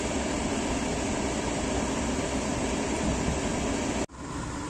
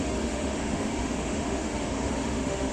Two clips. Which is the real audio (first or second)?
first